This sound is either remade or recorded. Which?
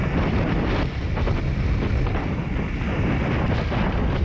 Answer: recorded